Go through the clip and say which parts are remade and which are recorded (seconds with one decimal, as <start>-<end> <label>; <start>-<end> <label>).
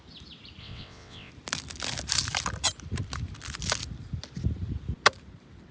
0.0-0.6 recorded; 0.6-1.3 remade; 1.3-5.7 recorded